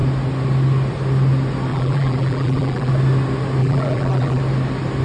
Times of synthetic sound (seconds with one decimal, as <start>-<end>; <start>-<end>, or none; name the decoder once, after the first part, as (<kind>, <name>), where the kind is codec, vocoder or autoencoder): 1.7-2.9 (vocoder, BigVGAN v2); 3.6-4.4